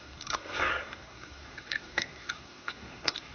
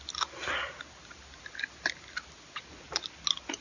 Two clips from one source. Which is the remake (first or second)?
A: first